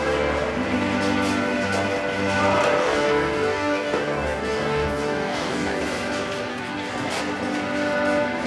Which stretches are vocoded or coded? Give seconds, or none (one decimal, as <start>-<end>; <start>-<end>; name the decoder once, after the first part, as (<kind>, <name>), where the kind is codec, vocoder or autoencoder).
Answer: 2.8-5.8 (codec, DAC); 6.5-7.2